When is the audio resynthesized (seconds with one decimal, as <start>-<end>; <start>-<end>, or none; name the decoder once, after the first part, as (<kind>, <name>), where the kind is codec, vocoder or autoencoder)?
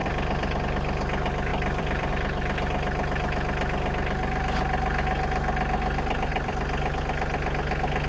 0.0-0.6 (vocoder, BigVGAN v2); 1.5-2.1; 6.3-7.0